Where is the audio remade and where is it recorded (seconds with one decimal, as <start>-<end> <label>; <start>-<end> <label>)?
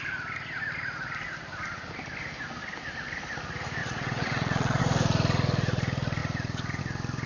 0.0-3.8 recorded; 3.8-4.8 remade; 4.8-7.3 recorded